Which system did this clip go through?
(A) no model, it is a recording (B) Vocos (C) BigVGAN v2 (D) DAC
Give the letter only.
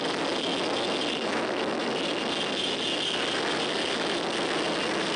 A